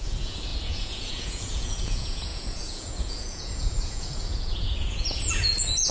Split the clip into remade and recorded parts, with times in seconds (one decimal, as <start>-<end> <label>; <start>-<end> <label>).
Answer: 0.0-5.9 remade